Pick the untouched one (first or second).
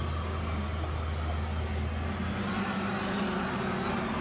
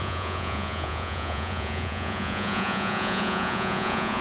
first